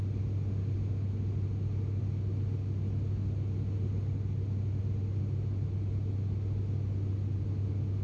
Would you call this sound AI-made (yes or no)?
no